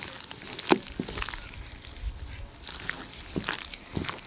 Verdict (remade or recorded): recorded